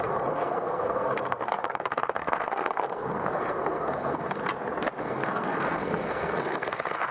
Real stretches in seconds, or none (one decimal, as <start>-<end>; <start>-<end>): 4.4-5.0